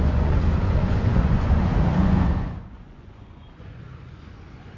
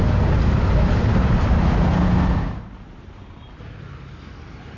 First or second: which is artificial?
first